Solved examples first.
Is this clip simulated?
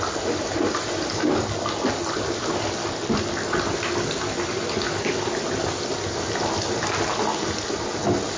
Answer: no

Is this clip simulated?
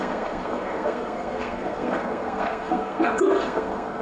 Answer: yes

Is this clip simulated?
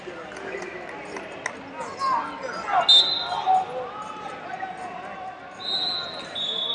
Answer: no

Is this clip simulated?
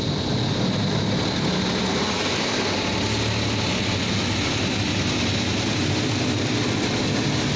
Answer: no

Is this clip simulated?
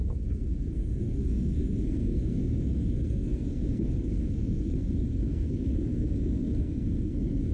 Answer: yes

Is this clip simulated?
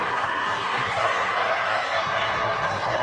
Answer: yes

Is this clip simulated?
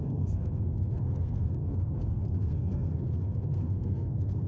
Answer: yes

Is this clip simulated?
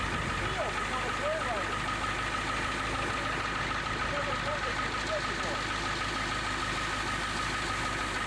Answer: no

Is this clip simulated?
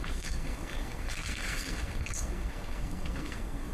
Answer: yes